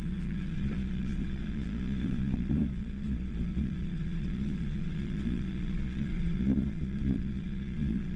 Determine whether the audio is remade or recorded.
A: remade